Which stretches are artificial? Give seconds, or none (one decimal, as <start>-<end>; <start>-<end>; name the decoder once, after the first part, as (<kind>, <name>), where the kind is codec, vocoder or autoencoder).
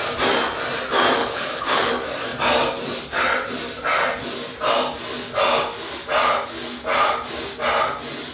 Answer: 1.2-1.9 (codec, HILCodec)